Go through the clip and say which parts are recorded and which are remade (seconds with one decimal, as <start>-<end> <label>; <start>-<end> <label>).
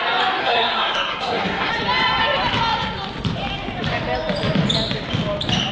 0.0-0.4 recorded; 0.4-1.7 remade; 1.7-5.7 recorded